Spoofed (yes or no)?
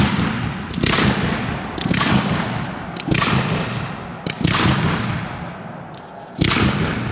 no